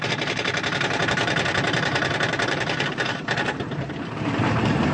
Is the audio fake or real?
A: fake